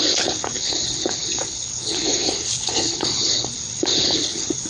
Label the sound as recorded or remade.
remade